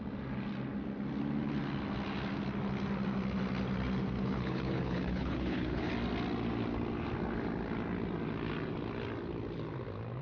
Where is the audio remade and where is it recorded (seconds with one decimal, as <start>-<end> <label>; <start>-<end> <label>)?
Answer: 0.0-4.2 recorded; 4.2-5.9 remade; 5.9-10.2 recorded